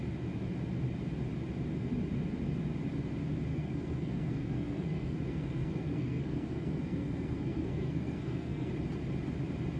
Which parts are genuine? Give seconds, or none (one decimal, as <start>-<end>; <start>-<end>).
0.0-3.5; 8.7-9.8